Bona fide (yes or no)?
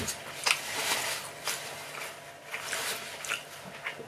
yes